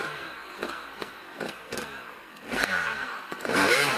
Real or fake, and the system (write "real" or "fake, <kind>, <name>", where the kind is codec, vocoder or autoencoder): fake, codec, SNAC